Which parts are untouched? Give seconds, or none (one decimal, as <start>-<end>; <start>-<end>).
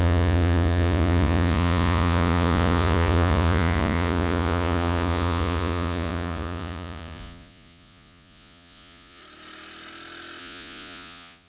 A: 9.2-10.4